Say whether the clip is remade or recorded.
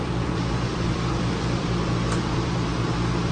remade